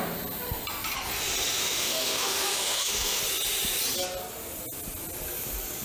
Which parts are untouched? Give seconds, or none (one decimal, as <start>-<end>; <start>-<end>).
0.0-1.6; 3.2-5.8